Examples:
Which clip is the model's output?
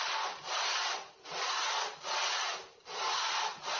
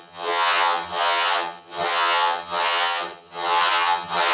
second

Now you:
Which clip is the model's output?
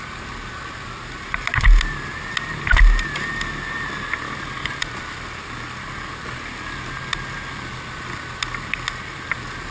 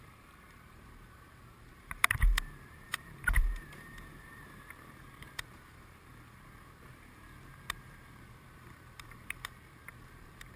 second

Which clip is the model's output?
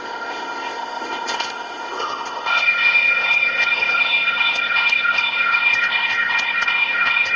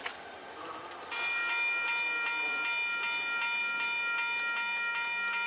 first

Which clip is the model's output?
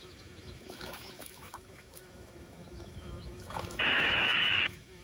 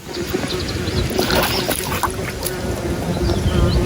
first